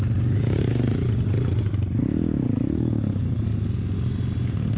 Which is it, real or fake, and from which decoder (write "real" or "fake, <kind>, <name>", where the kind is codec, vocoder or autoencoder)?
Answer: real